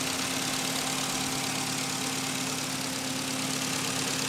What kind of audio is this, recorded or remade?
recorded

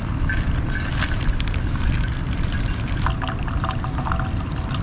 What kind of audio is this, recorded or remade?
recorded